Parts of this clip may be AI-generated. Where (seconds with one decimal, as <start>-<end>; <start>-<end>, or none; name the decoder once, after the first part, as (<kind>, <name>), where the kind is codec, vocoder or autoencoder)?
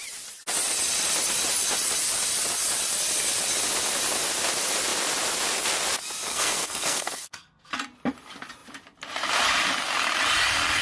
6.3-7.7 (codec, SNAC)